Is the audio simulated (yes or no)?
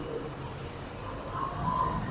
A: no